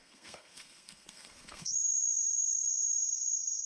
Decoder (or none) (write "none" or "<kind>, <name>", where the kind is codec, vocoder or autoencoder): codec, SNAC